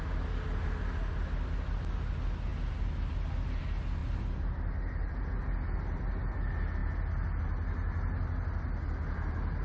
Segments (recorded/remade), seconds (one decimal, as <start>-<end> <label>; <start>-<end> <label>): 0.0-9.6 recorded